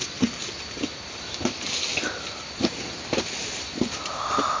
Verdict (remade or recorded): recorded